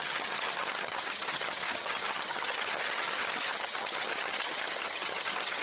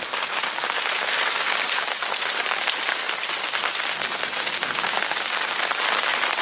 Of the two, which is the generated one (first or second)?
first